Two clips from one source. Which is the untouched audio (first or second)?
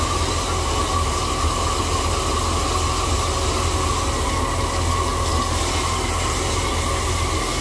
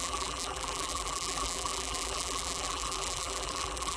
first